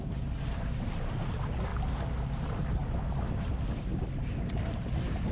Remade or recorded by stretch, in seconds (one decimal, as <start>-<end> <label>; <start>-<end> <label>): 0.0-1.7 remade; 1.7-2.4 recorded; 2.4-2.8 remade; 2.8-3.4 recorded; 3.4-3.9 remade; 3.9-4.4 recorded; 4.4-5.3 remade